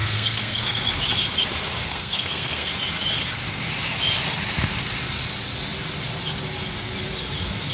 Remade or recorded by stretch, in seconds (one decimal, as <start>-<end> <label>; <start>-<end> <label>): 0.0-0.9 remade; 0.9-1.8 recorded; 1.8-2.7 remade; 2.7-7.7 recorded